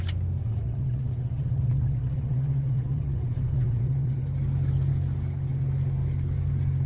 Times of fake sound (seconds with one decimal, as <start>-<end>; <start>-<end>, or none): 0.4-4.2